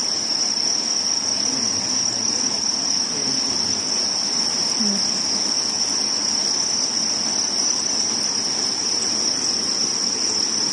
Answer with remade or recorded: recorded